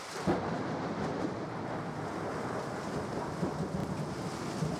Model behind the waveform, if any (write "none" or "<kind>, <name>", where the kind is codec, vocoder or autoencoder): none